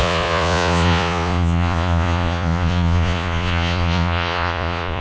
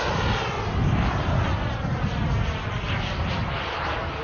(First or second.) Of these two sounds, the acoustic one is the second